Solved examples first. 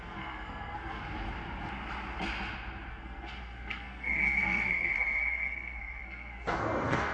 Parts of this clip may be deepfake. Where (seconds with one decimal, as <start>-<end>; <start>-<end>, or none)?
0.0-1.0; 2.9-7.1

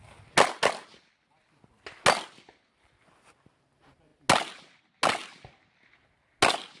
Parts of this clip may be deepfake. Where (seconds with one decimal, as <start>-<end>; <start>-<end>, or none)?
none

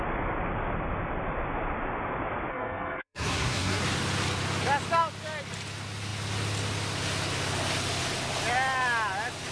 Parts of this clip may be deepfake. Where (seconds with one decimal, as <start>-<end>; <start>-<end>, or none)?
2.5-3.8

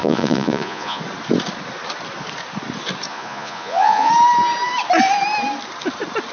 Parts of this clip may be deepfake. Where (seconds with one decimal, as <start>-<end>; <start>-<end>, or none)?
0.0-1.0; 3.1-4.1

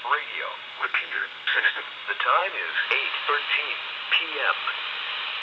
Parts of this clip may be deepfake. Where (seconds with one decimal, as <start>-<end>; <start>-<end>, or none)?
0.7-1.8

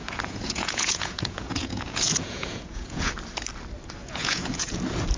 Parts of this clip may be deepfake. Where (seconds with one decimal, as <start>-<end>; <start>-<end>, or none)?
0.0-3.1; 4.0-4.8

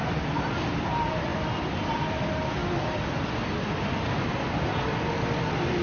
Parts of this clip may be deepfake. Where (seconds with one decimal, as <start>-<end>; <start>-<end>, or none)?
0.0-0.9; 1.3-1.9

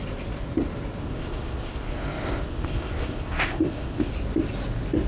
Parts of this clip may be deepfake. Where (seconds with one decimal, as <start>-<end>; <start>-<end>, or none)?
1.0-4.1